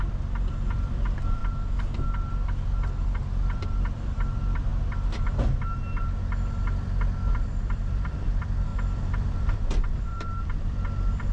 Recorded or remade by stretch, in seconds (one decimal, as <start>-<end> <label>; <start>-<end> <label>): 0.0-1.4 remade; 1.4-3.0 recorded; 3.0-4.7 remade; 4.7-7.3 recorded; 7.3-11.3 remade